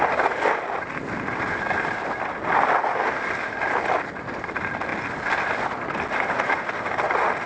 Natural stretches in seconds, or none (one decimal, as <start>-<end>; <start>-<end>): 0.0-7.5

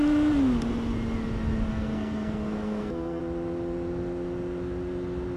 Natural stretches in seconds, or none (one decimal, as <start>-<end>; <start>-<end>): 0.0-1.7; 3.2-5.4

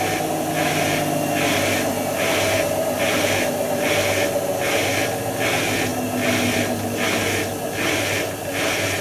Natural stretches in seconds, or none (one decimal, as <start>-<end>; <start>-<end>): 0.0-9.0

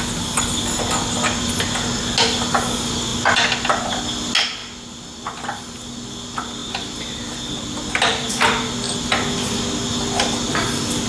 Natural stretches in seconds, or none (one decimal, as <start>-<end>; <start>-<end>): 0.0-11.1

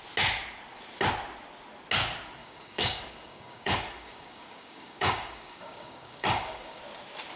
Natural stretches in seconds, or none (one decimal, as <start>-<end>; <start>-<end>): 0.0-2.4; 6.8-7.4

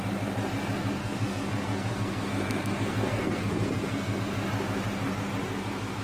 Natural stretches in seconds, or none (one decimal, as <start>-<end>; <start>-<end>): 0.0-1.0; 4.2-6.0

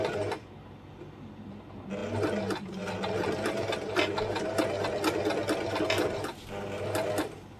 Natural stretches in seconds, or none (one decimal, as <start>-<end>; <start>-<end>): 0.0-7.6